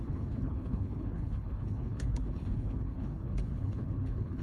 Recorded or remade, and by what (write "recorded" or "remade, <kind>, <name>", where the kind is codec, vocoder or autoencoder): remade, codec, HILCodec